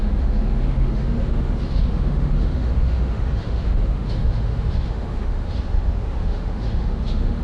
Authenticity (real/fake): fake